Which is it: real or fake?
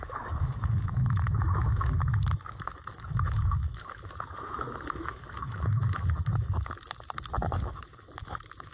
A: fake